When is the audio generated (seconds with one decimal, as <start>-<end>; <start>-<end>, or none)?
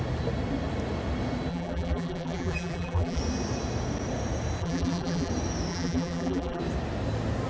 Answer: 1.5-3.2; 4.6-5.3; 5.7-6.6